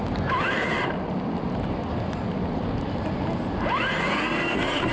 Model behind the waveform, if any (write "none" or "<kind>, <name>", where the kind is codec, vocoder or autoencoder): none